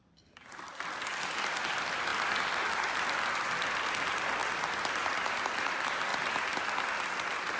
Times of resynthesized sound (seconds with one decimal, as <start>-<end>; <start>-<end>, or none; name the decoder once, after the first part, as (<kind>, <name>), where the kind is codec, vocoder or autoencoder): none